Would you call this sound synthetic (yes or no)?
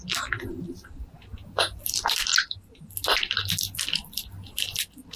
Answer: no